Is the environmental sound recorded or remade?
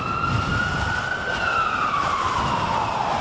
recorded